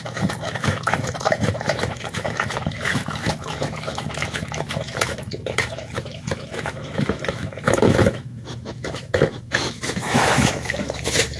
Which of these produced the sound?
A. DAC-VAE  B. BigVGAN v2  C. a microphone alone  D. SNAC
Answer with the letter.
A